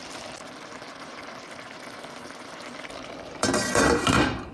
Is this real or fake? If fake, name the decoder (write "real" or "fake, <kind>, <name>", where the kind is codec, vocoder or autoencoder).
fake, vocoder, BigVGAN v2